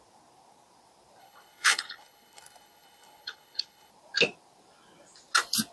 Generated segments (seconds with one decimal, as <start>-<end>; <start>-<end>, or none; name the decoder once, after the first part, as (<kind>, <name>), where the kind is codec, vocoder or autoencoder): 1.2-3.9 (codec, HILCodec)